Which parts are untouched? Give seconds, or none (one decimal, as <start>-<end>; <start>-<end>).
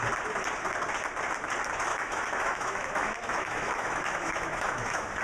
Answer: 0.0-1.9